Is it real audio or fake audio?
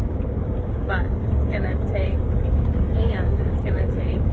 fake